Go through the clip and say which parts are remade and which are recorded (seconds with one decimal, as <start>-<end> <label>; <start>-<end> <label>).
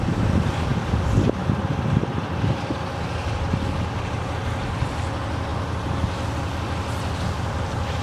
0.0-8.0 recorded